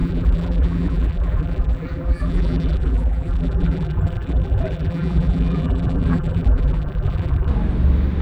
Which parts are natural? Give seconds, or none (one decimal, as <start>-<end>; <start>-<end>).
7.5-8.2